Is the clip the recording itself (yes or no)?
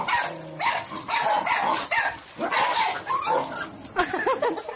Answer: yes